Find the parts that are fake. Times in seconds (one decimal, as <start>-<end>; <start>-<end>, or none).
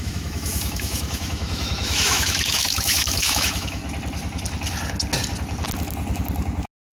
0.0-3.8